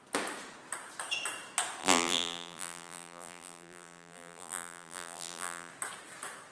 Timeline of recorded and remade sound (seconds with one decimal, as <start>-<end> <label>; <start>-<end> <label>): 0.0-1.8 recorded; 1.8-5.7 remade; 5.7-6.5 recorded